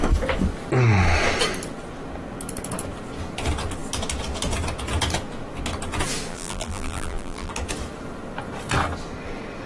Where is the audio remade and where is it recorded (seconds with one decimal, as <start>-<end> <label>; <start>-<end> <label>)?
0.0-6.3 recorded; 6.3-7.5 remade; 7.5-9.7 recorded